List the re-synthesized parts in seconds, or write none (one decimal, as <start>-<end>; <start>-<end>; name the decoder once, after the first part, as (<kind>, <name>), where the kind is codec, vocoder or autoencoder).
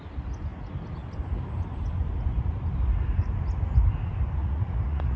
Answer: 4.4-5.2 (vocoder, Vocos)